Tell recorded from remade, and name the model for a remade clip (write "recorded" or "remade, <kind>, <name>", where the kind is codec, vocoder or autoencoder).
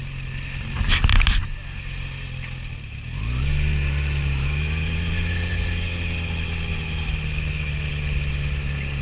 recorded